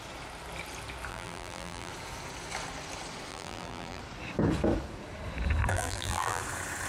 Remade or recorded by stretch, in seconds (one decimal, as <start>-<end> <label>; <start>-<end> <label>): 0.0-1.1 recorded; 1.1-1.9 remade; 1.9-3.3 recorded; 3.3-4.0 remade; 4.0-5.7 recorded; 5.7-6.4 remade; 6.4-6.9 recorded